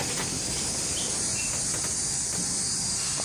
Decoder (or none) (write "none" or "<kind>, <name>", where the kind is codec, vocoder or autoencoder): none